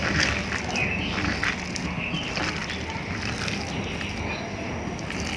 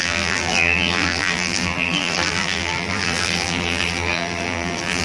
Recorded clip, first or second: first